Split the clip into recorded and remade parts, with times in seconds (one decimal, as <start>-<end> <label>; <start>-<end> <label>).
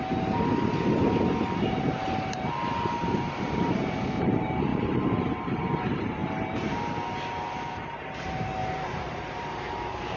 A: 0.0-6.2 remade; 6.2-7.5 recorded; 7.5-10.2 remade